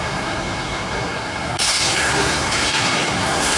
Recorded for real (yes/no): no